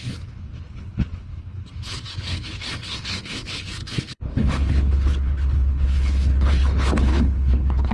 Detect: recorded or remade remade